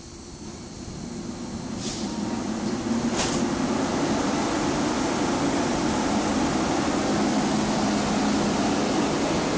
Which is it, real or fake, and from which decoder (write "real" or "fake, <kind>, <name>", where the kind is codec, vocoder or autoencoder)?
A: real